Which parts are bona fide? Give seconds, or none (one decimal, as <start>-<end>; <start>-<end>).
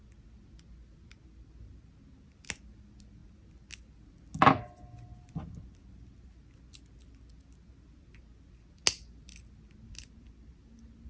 0.0-11.1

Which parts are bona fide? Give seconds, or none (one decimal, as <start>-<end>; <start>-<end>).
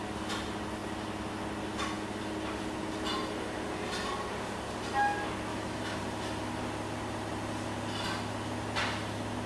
0.0-5.5; 6.0-9.5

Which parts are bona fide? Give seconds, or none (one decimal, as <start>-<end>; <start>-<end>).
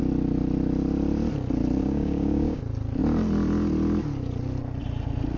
0.0-1.8; 2.6-5.4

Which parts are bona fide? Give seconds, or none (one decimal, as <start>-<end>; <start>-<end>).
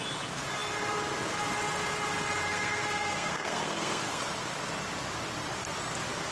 0.0-2.5; 4.2-6.3